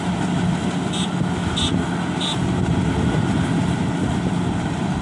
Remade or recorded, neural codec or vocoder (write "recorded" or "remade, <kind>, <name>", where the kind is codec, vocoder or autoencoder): recorded